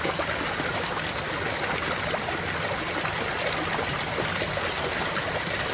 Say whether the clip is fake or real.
real